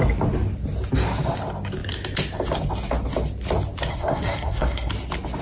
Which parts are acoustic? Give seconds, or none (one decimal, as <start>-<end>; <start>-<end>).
0.0-3.9; 4.9-5.4